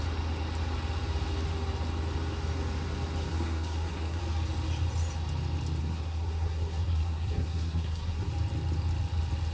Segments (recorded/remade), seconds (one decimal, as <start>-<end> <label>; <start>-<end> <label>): 0.0-3.3 recorded; 3.3-4.2 remade; 4.2-5.8 recorded; 5.8-8.3 remade; 8.3-9.5 recorded